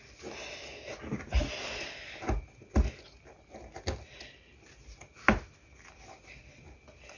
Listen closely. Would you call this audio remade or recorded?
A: recorded